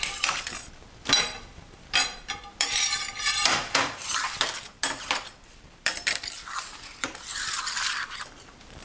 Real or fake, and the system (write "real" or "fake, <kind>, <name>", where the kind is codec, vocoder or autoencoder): fake, vocoder, BigVGAN v2